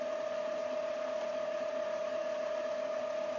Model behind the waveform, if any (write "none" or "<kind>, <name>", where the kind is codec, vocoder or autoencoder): none